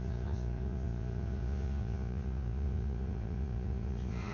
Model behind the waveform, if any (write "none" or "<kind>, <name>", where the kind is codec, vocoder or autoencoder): vocoder, Vocos